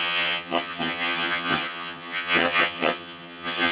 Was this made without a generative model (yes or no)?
no